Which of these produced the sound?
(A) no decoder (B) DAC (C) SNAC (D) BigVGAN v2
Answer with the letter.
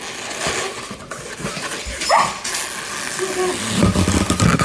A